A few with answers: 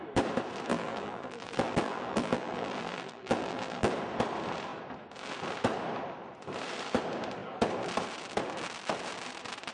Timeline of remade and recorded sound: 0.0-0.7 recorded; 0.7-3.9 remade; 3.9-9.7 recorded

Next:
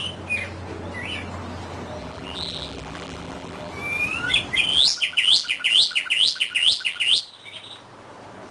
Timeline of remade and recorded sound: 0.0-2.0 recorded; 2.0-3.7 remade; 3.7-4.7 recorded; 4.7-7.2 remade; 7.2-8.5 recorded